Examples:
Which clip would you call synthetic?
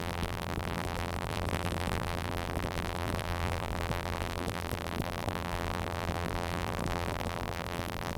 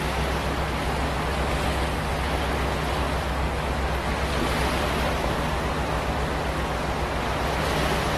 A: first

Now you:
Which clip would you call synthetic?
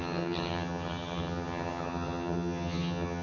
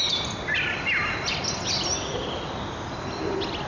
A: first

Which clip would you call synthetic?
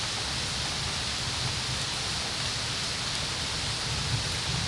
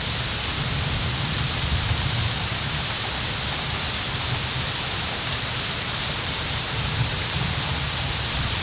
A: second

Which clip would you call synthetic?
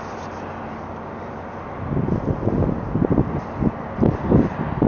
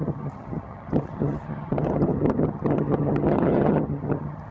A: second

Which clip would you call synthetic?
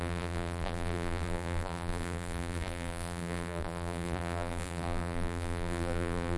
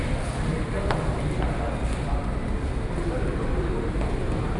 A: first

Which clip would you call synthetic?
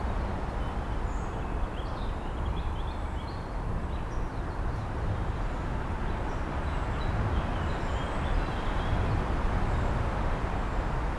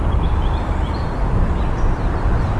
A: second